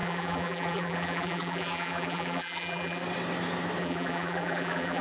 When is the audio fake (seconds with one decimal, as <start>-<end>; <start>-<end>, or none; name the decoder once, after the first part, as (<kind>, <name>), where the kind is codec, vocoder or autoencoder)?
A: 0.0-3.0 (vocoder, BigVGAN v2); 3.8-5.0